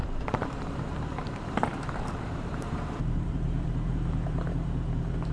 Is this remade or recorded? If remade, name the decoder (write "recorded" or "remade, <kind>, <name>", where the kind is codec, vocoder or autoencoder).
remade, vocoder, BigVGAN v2